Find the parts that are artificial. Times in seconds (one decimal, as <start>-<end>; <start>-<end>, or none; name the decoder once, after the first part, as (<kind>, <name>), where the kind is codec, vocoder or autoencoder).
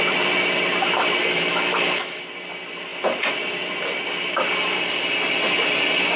1.2-2.2 (autoencoder, DAC-VAE)